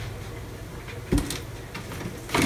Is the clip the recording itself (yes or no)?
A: yes